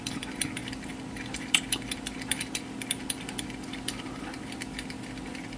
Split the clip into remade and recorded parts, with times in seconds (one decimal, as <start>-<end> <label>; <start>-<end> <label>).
0.0-5.6 remade